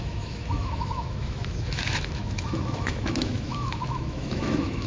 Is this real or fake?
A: fake